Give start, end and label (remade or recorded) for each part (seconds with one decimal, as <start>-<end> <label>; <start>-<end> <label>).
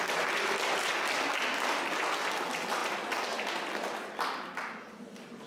0.0-5.5 recorded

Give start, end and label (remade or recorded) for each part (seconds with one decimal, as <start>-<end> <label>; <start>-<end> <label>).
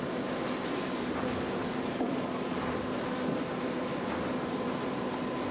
0.0-1.6 recorded; 1.6-2.7 remade; 2.7-5.5 recorded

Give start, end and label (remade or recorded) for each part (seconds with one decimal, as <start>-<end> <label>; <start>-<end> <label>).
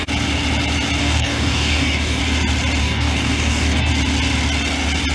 0.0-1.0 recorded; 1.0-2.2 remade; 2.2-2.8 recorded; 2.8-3.9 remade; 3.9-5.1 recorded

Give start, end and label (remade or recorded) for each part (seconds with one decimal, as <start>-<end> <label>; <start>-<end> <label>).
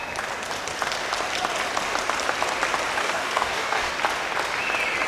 0.0-3.0 recorded; 3.0-3.9 remade; 3.9-5.1 recorded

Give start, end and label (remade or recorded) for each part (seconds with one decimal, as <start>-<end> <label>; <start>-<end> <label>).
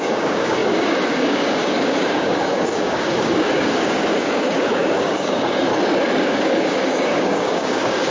0.0-5.7 remade; 5.7-6.2 recorded; 6.2-8.1 remade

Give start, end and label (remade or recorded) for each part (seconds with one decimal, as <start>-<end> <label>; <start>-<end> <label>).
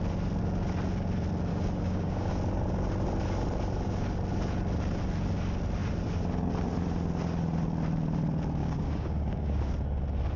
0.0-1.5 recorded; 1.5-2.3 remade; 2.3-8.6 recorded; 8.6-9.6 remade; 9.6-10.4 recorded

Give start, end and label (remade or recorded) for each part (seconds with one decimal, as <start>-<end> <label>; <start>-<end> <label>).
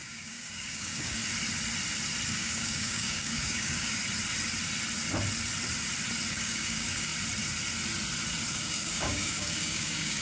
0.0-1.2 remade; 1.2-2.3 recorded; 2.3-4.0 remade; 4.0-6.3 recorded; 6.3-7.1 remade; 7.1-8.5 recorded; 8.5-10.2 remade